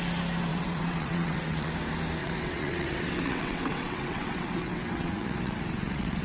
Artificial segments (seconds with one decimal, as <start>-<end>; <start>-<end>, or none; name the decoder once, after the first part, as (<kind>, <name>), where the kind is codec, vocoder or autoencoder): 0.5-1.7 (vocoder, WaveNeXt); 2.2-6.2